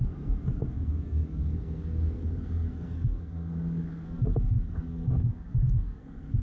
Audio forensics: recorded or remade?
remade